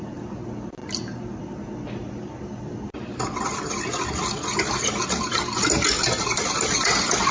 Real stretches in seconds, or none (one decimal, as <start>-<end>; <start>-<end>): 0.0-7.3